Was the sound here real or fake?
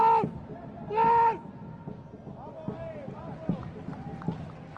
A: real